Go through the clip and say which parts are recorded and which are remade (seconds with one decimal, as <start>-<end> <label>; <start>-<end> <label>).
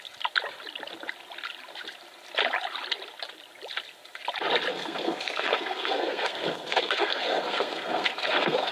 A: 0.0-4.7 recorded; 4.7-8.7 remade